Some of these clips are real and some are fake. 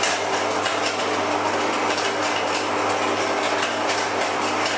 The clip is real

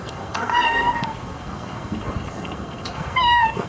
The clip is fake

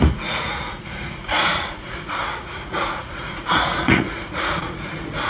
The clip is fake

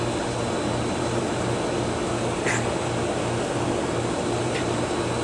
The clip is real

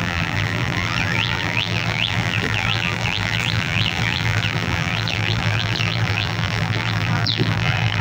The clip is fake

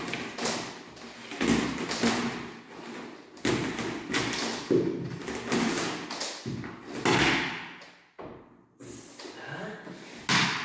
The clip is real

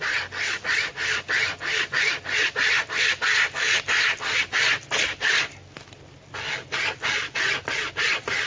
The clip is real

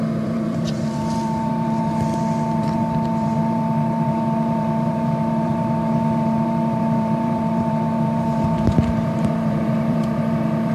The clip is fake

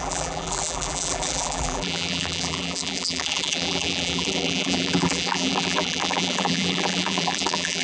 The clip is fake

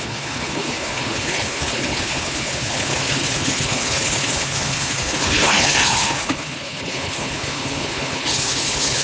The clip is fake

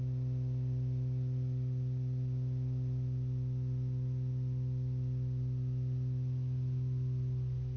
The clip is real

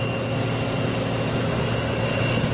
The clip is real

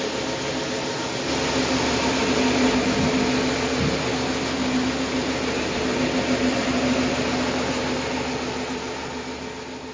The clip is real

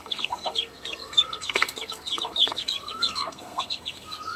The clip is fake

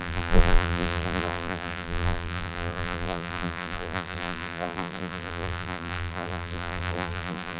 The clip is fake